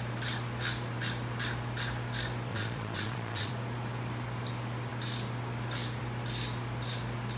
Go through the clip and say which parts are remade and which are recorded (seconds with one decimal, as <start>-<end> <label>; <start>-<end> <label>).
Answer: 0.0-2.5 recorded; 2.5-3.5 remade; 3.5-7.4 recorded